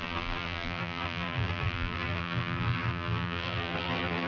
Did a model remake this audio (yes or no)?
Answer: yes